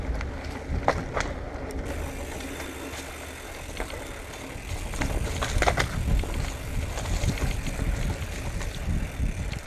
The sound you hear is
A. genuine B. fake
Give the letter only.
A